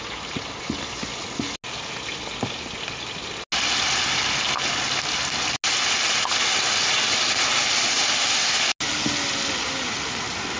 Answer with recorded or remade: recorded